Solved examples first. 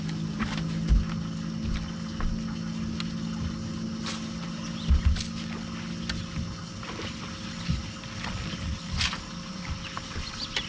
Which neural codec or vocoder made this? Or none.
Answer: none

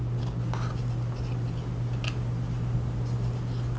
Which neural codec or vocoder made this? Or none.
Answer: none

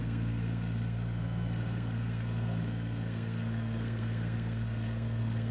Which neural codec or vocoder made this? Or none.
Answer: codec, SNAC